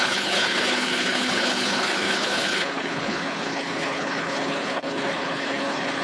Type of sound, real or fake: fake